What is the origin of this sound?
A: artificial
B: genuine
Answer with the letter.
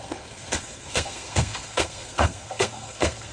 A